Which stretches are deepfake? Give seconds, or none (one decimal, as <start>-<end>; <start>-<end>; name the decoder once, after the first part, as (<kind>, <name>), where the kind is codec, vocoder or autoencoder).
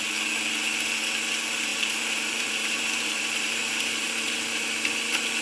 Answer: 1.7-4.9 (vocoder, BigVGAN v2)